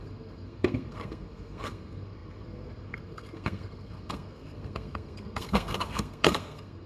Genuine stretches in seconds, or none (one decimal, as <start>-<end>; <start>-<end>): none